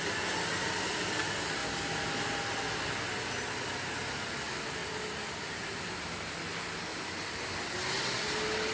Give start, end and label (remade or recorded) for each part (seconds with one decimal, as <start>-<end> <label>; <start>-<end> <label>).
0.0-8.7 recorded